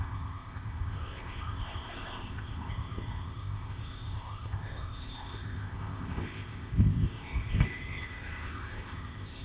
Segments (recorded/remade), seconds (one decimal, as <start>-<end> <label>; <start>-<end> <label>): 0.0-9.4 remade